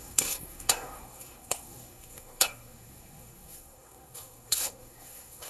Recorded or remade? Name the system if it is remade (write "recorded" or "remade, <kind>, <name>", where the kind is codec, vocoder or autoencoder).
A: remade, codec, SNAC